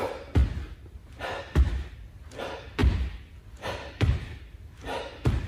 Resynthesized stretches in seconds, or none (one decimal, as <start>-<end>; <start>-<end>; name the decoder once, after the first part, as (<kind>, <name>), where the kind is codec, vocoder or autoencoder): 0.0-0.4 (vocoder, BigVGAN v2); 2.4-5.5